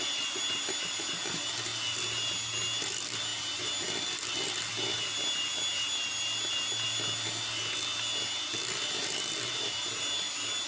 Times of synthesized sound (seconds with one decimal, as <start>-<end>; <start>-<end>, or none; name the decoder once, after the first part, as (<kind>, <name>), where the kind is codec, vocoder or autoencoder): none